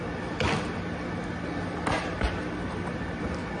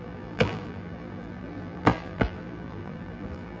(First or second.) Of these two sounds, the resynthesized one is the second